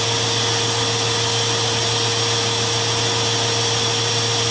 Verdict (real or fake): real